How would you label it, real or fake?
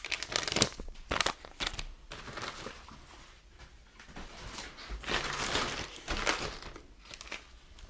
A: real